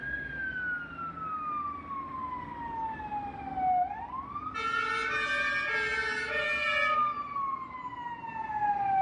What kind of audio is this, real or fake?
real